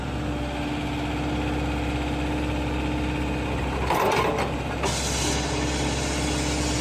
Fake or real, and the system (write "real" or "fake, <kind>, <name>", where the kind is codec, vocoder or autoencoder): real